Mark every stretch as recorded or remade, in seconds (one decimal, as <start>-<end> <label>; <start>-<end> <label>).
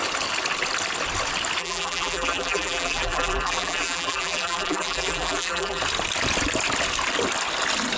0.0-1.6 recorded; 1.6-5.8 remade; 5.8-8.0 recorded